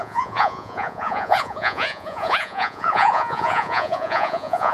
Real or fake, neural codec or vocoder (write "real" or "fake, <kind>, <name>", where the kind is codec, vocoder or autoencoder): fake, vocoder, Vocos